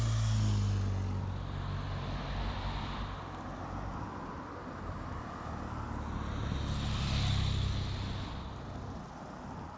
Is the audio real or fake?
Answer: real